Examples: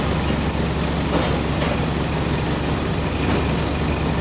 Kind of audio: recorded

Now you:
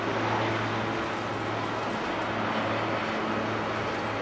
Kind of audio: recorded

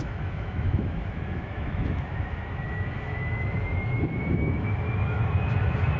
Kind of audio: remade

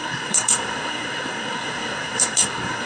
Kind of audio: remade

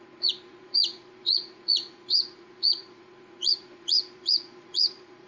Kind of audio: remade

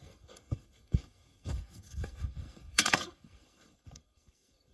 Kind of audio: remade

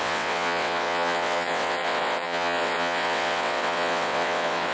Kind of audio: remade